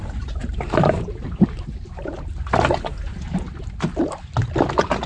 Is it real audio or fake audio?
real